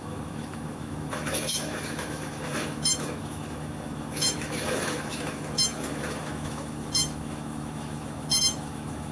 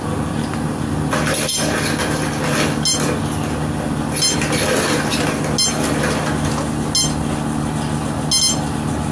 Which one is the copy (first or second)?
first